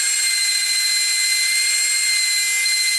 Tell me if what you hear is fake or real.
real